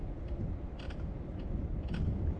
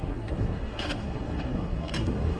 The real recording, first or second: first